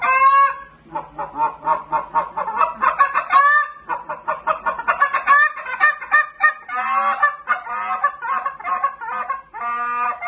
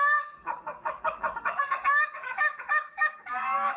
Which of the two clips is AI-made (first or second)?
second